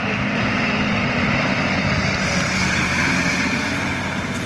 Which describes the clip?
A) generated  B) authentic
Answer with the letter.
B